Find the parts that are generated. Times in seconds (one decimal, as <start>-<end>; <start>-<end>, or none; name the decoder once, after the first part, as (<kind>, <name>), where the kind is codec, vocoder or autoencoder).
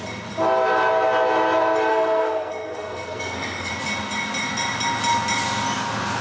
1.9-3.7 (codec, SNAC)